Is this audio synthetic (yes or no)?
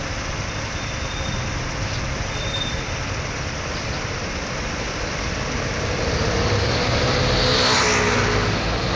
no